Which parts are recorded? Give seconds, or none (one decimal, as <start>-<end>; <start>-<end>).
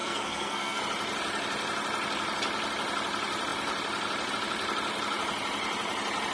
0.8-6.3